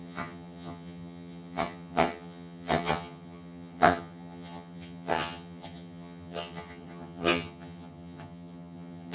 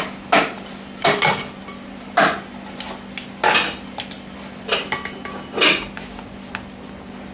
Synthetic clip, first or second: first